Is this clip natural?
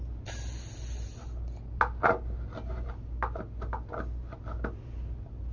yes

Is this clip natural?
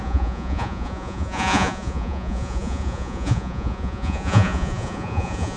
no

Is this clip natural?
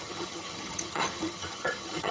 no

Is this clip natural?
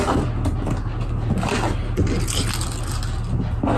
yes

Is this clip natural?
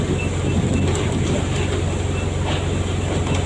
yes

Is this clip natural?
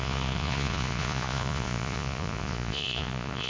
no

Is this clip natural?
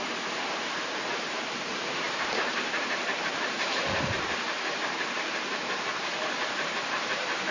no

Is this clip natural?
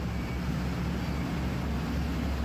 yes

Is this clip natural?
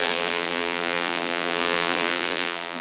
no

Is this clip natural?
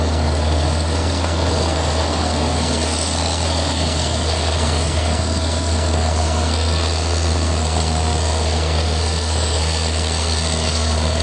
no